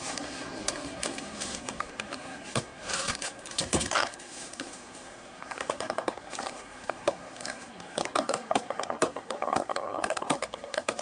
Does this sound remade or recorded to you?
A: remade